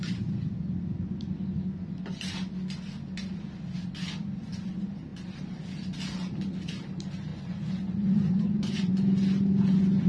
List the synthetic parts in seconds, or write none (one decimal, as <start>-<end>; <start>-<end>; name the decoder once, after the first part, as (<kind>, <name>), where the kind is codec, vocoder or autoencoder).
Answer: 7.3-8.9 (vocoder, Vocos)